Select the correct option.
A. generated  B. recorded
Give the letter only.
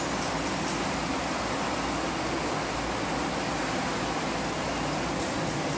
B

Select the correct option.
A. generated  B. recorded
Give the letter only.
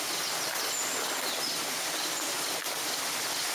B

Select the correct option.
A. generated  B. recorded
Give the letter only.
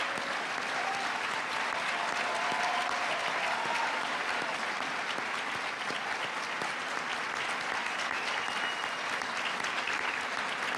B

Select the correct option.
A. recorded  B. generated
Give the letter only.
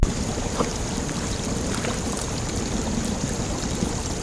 B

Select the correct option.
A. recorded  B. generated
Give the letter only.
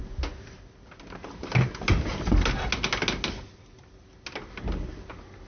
A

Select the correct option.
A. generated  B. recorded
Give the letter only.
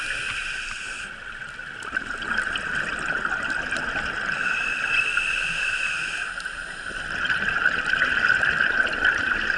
B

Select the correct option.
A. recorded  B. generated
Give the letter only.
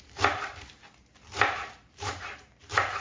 B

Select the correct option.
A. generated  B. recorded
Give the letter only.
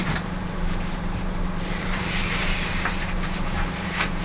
A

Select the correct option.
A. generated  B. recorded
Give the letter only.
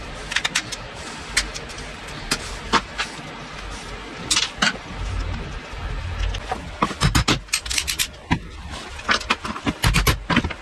B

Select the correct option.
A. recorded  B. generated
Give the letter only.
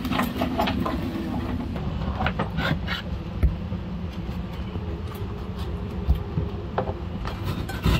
A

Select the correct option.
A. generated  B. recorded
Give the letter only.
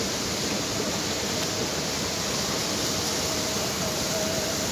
A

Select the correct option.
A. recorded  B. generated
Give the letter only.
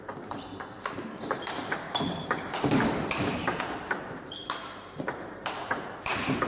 B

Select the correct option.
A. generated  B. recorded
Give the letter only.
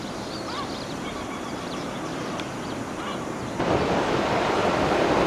A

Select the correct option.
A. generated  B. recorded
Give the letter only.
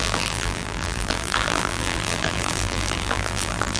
A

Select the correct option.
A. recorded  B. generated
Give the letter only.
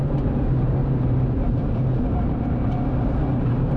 B